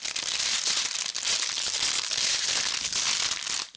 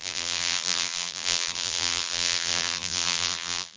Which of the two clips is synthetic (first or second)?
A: second